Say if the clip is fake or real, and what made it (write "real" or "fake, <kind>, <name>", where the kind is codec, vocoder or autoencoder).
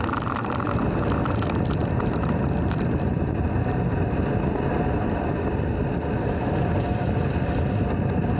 real